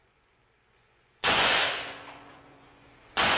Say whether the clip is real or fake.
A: fake